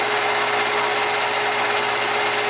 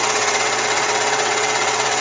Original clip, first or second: first